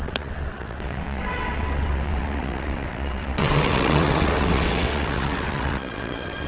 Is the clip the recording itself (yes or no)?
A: no